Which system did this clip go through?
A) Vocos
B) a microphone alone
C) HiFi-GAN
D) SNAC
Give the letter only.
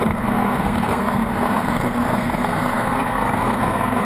D